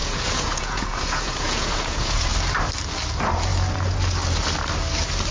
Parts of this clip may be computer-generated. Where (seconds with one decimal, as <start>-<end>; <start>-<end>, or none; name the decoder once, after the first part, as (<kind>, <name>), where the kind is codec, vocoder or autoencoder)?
0.0-2.3 (vocoder, Vocos)